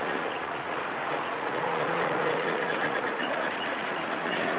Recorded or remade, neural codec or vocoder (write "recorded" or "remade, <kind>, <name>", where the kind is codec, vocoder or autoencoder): remade, vocoder, Vocos